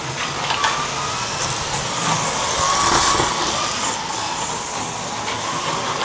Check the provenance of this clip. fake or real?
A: real